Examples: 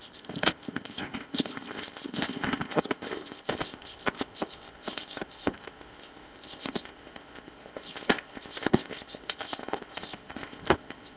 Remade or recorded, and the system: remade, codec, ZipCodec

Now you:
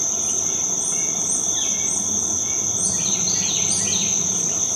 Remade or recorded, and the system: recorded